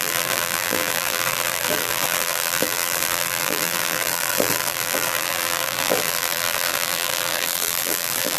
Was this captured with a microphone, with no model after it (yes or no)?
no